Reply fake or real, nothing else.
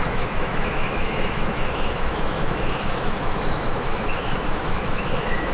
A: fake